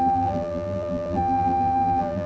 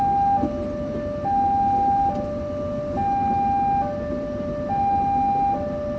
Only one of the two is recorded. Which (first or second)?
second